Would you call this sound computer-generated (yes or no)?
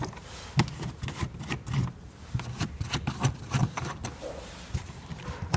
no